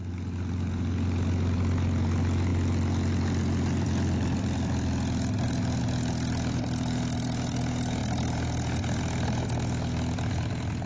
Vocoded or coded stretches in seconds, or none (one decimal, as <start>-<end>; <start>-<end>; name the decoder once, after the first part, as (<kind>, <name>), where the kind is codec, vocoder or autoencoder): none